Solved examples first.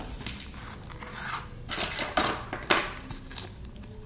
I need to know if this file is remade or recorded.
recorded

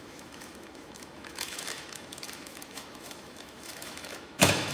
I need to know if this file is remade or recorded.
remade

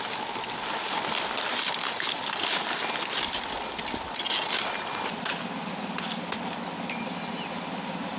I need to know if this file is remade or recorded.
recorded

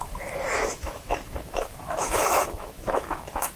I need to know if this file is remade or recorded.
remade